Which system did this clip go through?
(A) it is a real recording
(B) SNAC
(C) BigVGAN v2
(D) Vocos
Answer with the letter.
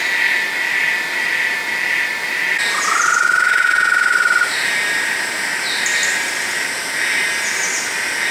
A